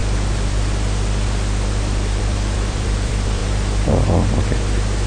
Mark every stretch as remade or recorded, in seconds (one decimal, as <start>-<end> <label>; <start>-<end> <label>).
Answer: 0.0-2.2 recorded; 2.2-3.4 remade; 3.4-5.1 recorded